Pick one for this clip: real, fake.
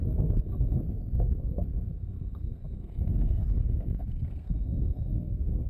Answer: fake